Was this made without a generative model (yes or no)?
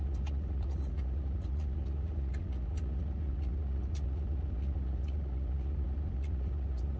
no